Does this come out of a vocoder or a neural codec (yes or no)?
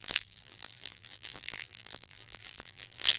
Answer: yes